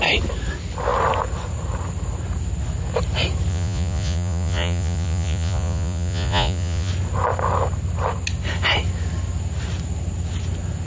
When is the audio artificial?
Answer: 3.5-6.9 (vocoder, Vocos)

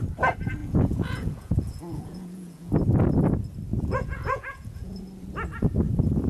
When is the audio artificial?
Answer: 0.6-2.7 (vocoder, Vocos); 3.7-5.0